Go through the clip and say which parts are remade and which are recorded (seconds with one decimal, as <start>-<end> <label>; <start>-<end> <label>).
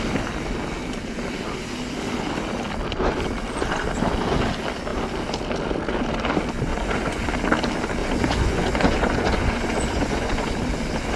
0.0-6.7 recorded; 6.7-7.3 remade; 7.3-8.0 recorded; 8.0-10.5 remade; 10.5-11.2 recorded